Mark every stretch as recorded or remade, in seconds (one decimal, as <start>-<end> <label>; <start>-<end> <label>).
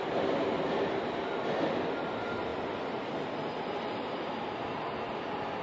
0.0-5.6 recorded